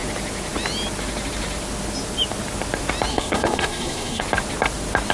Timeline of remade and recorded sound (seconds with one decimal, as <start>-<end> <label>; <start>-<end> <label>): 0.0-3.1 recorded; 3.1-4.2 remade; 4.2-5.1 recorded